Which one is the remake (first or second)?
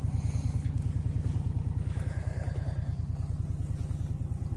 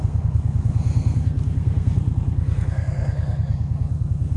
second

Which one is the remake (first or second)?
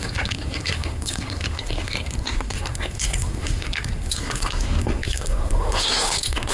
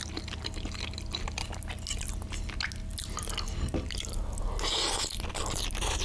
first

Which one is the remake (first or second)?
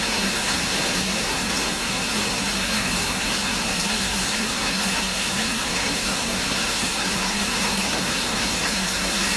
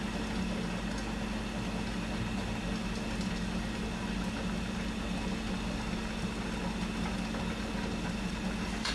first